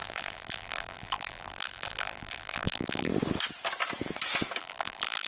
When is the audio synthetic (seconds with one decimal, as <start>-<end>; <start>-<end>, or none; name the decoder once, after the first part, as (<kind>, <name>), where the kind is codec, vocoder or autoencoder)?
0.0-3.1 (vocoder, BigVGAN v2); 4.6-5.3